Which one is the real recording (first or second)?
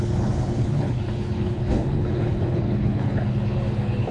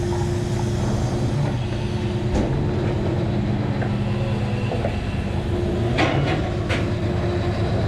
second